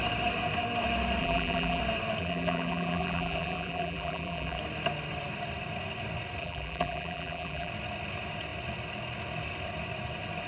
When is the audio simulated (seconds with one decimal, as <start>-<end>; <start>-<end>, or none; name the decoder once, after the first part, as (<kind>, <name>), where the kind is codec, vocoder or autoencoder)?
1.2-1.8 (vocoder, BigVGAN v2); 2.2-4.6; 6.4-7.7